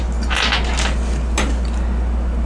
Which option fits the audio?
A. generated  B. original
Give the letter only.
B